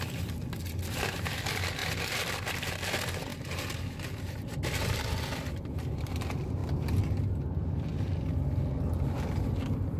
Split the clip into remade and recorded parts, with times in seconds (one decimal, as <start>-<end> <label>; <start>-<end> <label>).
0.0-10.0 recorded